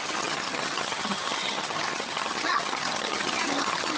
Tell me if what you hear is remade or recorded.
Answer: remade